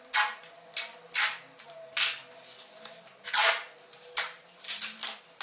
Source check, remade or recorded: recorded